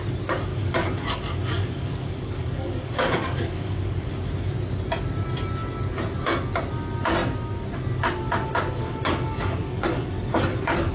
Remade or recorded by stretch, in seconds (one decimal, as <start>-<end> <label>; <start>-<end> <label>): 0.0-0.5 recorded; 0.5-4.1 remade; 4.1-8.5 recorded; 8.5-10.1 remade; 10.1-10.9 recorded